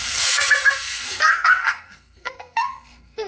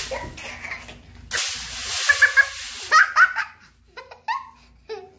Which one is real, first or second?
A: second